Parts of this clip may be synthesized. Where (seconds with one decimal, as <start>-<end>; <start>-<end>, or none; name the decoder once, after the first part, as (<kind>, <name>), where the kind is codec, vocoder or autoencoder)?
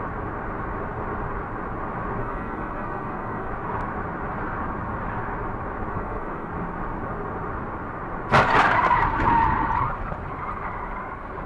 2.2-3.5 (codec, SNAC); 5.9-6.5